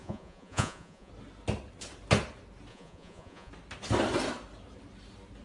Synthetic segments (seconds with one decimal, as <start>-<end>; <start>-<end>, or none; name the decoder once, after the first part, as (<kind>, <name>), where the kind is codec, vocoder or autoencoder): 0.0-1.1 (vocoder, Vocos); 2.7-3.5